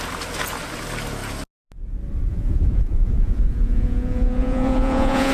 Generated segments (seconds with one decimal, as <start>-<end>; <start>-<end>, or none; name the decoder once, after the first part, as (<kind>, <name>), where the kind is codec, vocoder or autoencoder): 2.3-5.3 (vocoder, Vocos)